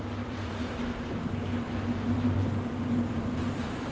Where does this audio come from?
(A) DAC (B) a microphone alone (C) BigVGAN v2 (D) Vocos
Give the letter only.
C